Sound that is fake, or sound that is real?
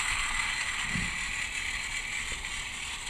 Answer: real